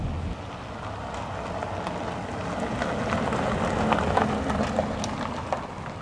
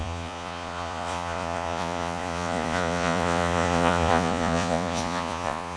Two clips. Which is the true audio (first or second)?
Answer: first